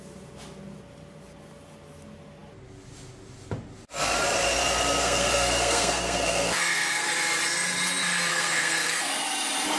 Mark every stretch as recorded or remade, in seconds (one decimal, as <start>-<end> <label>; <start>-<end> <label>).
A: 0.0-5.0 recorded; 5.0-7.1 remade; 7.1-8.3 recorded; 8.3-9.1 remade; 9.1-9.8 recorded